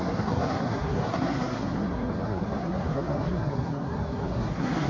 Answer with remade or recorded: remade